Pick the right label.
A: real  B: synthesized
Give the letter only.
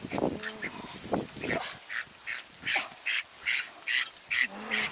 A